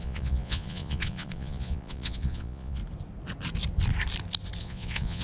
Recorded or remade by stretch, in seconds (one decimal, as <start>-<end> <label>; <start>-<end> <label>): 0.0-2.8 remade; 2.8-4.6 recorded; 4.6-5.2 remade